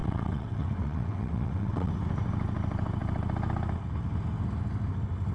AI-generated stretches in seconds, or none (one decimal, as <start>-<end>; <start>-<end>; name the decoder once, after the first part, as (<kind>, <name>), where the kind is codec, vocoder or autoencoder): 0.0-1.9 (vocoder, WaveNeXt)